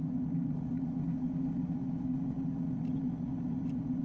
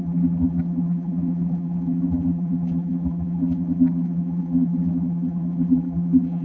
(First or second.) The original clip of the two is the first